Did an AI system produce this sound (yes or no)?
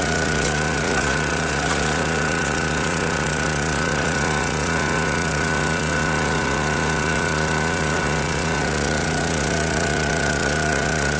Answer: yes